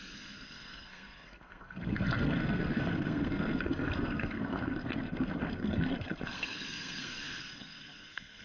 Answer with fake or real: fake